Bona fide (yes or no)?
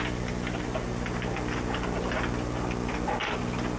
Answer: yes